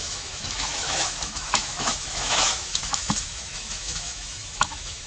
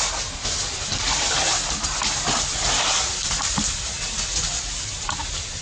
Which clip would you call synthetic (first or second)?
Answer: first